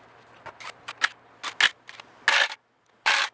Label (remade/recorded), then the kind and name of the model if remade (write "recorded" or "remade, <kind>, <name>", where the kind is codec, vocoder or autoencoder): recorded